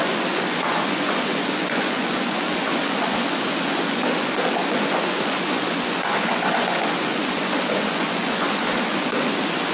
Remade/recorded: remade